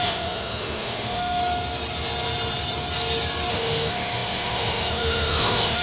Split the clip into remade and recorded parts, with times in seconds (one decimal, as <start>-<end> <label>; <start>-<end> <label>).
0.0-1.4 remade; 1.4-3.5 recorded; 3.5-5.8 remade